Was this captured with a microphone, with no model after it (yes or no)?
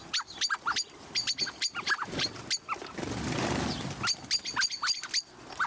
yes